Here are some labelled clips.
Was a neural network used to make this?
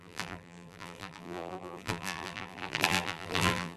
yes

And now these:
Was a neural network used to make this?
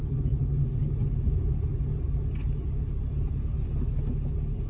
no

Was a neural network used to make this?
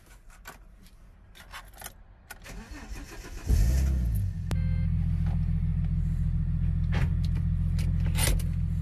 no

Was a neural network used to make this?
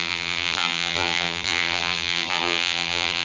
yes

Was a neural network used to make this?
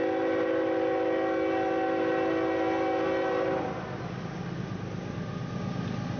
no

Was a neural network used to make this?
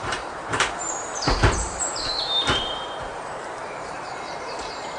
yes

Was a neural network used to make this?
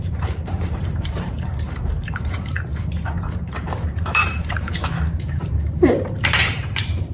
yes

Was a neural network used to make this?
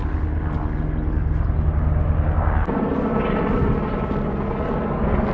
no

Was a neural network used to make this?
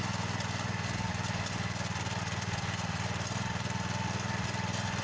no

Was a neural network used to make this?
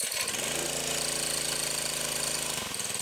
no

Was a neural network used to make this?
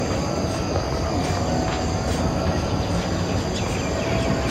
no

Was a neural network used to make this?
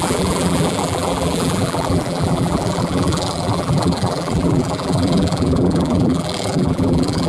yes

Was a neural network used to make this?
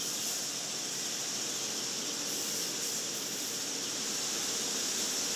no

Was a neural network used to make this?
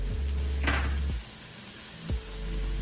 no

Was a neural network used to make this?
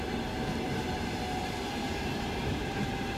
yes